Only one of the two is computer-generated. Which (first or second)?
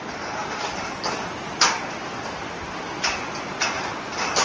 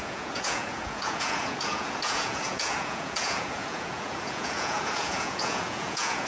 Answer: second